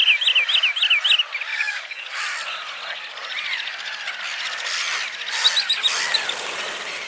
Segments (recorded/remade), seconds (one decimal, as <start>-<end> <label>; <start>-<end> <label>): 0.0-1.5 recorded; 1.5-2.2 remade; 2.2-7.1 recorded